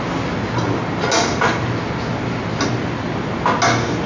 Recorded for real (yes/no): yes